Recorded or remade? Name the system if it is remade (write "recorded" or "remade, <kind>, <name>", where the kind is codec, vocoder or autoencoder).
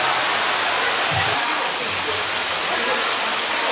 recorded